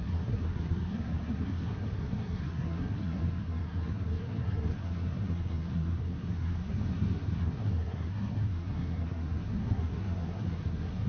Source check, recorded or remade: remade